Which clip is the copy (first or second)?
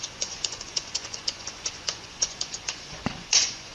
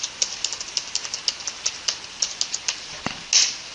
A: first